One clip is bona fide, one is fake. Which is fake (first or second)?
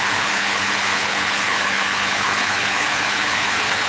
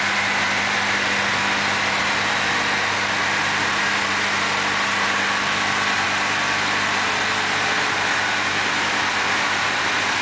first